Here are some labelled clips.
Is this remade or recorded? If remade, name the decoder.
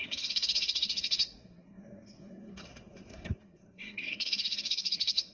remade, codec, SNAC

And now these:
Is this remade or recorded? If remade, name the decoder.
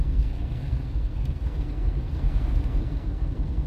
remade, codec, SNAC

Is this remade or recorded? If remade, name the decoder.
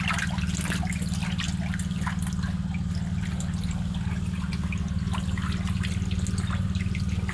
recorded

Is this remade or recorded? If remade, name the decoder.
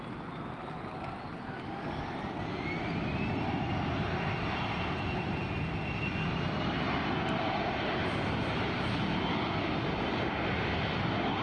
recorded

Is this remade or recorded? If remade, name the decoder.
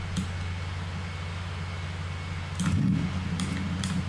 recorded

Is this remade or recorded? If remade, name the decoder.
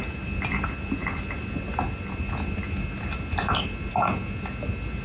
recorded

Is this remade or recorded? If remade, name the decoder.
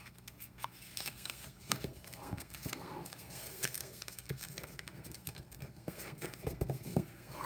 remade, codec, SNAC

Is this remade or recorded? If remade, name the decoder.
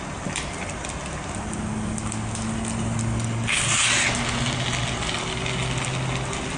recorded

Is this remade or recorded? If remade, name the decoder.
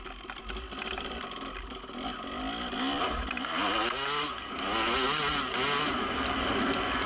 recorded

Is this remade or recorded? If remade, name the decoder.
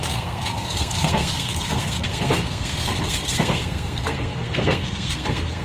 remade, codec, SNAC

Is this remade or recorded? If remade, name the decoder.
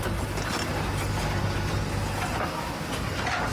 recorded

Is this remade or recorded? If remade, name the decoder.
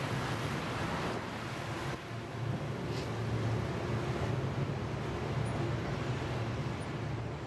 recorded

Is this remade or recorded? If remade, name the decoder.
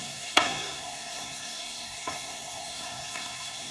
remade, codec, SNAC